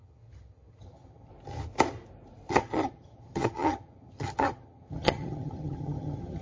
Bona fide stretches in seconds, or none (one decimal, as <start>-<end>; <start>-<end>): 1.3-2.5